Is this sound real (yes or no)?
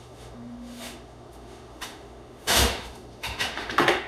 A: no